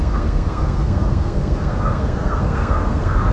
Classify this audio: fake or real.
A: fake